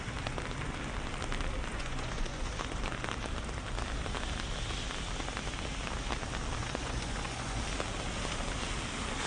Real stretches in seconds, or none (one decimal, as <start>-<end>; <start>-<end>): 0.0-1.7; 2.5-6.6; 7.6-9.3